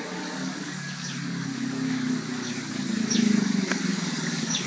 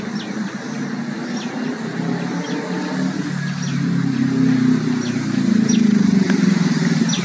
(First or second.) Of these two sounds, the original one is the second